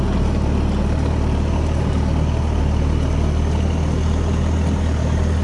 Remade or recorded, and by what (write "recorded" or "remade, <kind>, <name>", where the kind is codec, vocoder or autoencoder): recorded